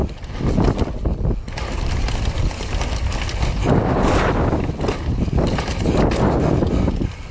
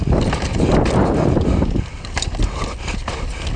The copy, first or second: second